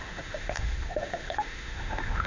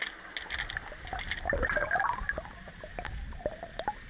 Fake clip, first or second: first